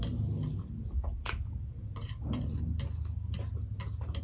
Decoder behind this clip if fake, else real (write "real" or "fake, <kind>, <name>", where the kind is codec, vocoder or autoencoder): real